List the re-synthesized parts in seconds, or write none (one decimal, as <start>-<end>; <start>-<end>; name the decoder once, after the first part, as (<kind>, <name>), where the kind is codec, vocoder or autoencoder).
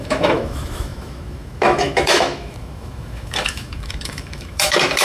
0.0-5.0 (autoencoder, DAC-VAE)